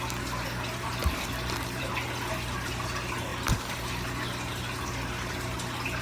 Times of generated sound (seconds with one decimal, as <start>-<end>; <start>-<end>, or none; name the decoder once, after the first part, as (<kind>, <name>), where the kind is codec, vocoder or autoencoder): 1.0-1.9 (vocoder, BigVGAN v2)